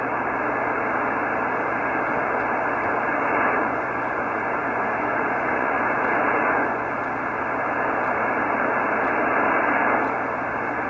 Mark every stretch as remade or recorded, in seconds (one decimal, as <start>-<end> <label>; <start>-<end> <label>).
0.0-3.1 recorded; 3.1-6.9 remade; 6.9-10.9 recorded